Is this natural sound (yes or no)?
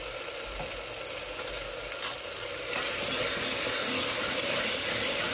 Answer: yes